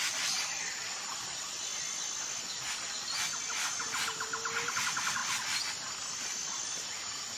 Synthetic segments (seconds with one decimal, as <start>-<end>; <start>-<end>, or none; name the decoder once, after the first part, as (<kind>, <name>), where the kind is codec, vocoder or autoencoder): 0.0-1.7 (vocoder, BigVGAN v2); 4.7-5.2; 6.2-7.4